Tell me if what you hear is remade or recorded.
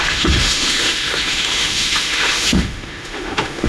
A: remade